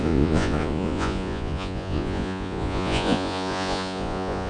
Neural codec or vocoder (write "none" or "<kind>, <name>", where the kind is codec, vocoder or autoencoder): vocoder, Vocos